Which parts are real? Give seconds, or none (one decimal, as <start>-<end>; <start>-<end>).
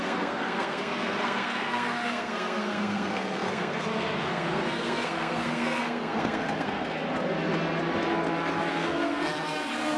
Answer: 7.0-8.7